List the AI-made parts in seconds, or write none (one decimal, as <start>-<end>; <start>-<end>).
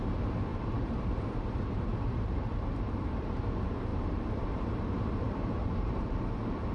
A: 0.5-3.4; 3.9-6.2